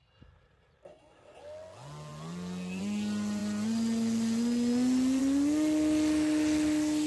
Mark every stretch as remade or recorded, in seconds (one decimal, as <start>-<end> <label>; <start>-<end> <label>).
0.0-7.1 recorded